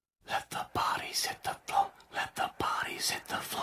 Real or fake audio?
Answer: real